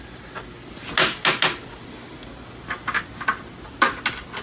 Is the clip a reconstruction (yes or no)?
no